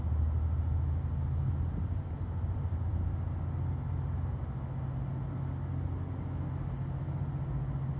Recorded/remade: recorded